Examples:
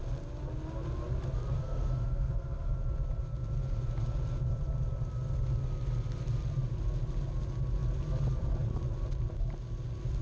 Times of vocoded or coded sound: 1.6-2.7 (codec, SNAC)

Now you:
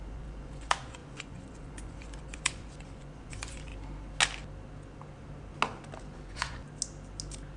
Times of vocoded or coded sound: 0.0-3.7 (vocoder, Vocos); 6.0-6.6

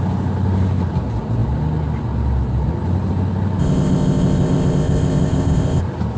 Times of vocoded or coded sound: 3.6-5.8 (codec, ZipCodec)

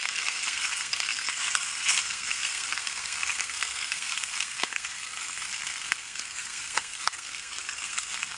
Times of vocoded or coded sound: 0.0-8.4 (codec, SNAC)

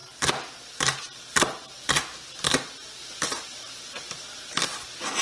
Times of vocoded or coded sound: 2.8-4.4 (vocoder, BigVGAN v2)

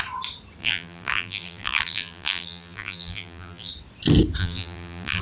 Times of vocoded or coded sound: 0.6-3.7 (vocoder, BigVGAN v2); 4.4-5.2